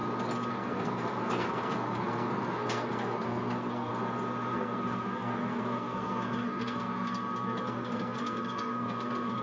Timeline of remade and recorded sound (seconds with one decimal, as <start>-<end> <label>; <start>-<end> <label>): 0.0-0.5 recorded; 0.5-3.9 remade; 3.9-4.5 recorded; 4.5-9.4 remade